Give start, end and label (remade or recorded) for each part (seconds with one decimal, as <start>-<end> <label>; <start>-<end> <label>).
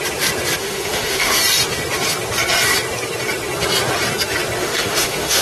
0.0-0.6 recorded; 0.6-1.4 remade; 1.4-4.6 recorded; 4.6-5.4 remade